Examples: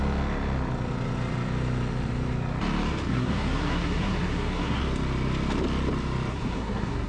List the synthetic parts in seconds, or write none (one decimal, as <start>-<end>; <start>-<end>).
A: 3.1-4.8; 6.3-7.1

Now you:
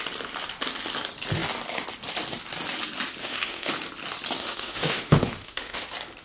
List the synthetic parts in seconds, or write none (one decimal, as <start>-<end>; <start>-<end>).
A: 3.2-3.7; 4.4-5.8

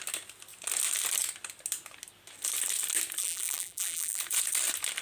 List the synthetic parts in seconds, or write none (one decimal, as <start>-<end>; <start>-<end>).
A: 3.2-4.2